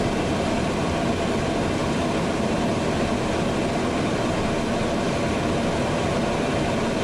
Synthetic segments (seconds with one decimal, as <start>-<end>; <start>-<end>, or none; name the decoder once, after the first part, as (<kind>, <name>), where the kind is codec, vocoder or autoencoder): none